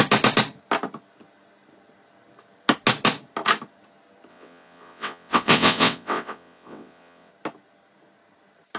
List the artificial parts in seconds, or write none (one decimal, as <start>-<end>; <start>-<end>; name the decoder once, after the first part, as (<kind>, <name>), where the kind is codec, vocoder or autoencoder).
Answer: 4.3-7.3 (vocoder, WaveNeXt)